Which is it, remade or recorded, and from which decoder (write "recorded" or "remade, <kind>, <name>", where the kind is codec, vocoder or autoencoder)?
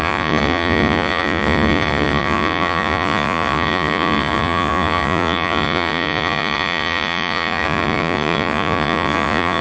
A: remade, vocoder, Vocos